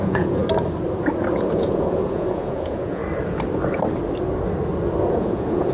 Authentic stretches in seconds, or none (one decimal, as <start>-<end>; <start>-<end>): 0.4-1.5; 3.0-5.1